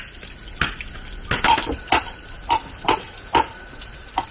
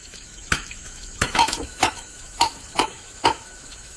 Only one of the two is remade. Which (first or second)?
second